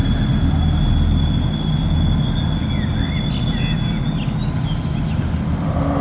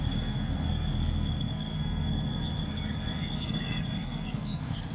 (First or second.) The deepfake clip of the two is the second